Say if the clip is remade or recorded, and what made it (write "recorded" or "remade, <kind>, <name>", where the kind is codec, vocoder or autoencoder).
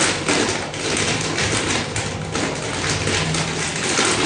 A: recorded